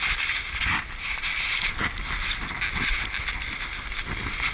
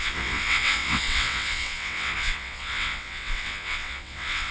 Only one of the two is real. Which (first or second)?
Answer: first